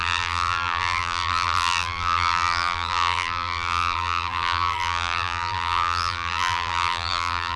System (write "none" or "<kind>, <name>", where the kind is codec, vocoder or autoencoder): vocoder, BigVGAN v2